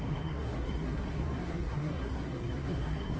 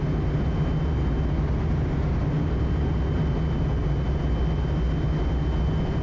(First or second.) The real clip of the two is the second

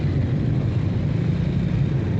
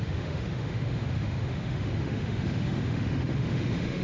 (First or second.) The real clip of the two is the first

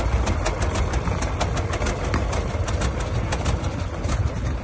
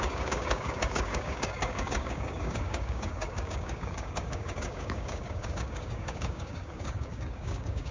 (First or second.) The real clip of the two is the first